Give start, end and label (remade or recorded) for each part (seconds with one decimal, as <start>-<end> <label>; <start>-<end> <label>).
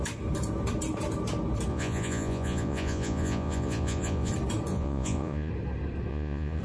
0.0-1.7 recorded; 1.7-4.3 remade; 4.3-4.7 recorded; 4.7-5.5 remade; 5.5-6.1 recorded; 6.1-6.6 remade